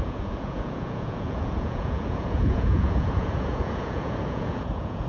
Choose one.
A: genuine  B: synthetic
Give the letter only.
B